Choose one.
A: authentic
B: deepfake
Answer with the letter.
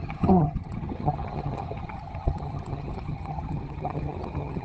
B